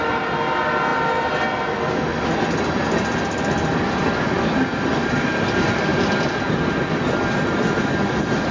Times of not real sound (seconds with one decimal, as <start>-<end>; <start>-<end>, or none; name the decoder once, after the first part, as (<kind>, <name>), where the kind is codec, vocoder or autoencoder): none